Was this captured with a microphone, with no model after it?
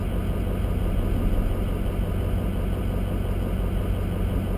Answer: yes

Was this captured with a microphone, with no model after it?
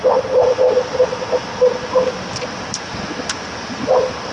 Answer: yes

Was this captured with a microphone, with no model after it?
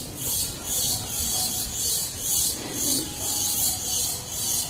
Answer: yes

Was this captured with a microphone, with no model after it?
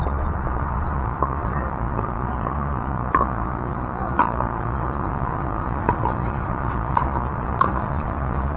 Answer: no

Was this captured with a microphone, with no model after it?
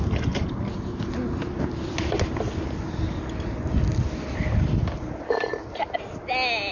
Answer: yes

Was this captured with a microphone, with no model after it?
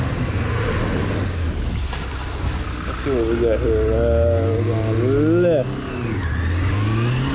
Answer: yes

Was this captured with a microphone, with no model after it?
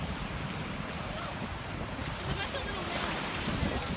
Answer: no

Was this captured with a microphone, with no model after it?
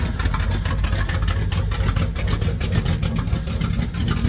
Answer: yes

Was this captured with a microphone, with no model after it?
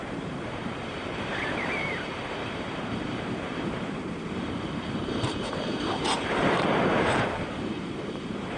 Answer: no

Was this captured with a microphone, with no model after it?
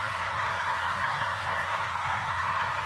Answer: no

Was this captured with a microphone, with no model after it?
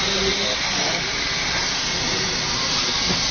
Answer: yes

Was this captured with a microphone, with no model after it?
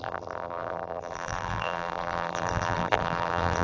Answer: no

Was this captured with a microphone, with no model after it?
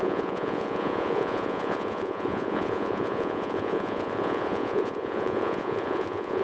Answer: no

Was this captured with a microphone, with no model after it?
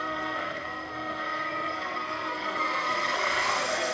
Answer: no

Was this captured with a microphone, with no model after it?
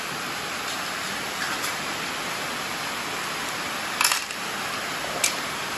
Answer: yes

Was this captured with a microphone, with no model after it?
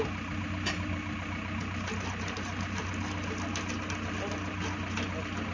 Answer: yes